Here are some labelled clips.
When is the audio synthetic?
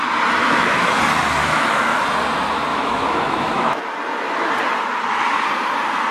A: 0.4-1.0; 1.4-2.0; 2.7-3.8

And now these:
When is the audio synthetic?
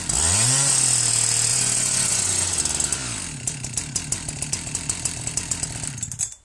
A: 1.5-2.6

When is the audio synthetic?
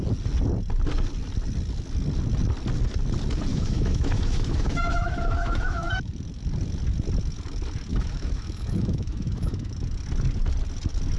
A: 3.5-6.1; 7.9-9.7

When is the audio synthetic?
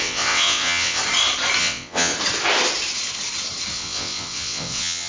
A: 0.0-1.0; 1.6-2.1; 3.7-5.1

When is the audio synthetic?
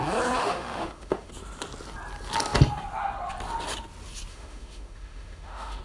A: 0.4-1.3; 4.3-5.8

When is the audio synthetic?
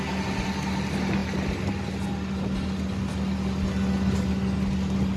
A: none